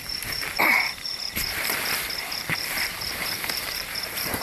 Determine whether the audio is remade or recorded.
remade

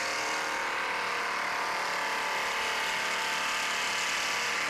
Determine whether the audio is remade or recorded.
recorded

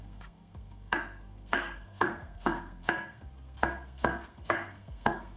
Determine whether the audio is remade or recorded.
remade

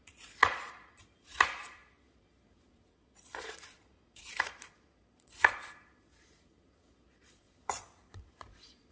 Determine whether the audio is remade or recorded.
remade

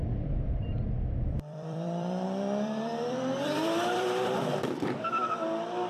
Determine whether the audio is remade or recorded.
remade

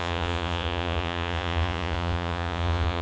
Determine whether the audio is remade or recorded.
remade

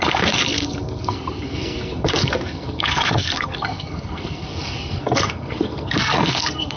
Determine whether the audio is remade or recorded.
remade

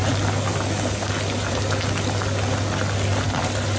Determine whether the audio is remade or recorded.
recorded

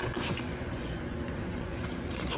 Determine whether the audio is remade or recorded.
remade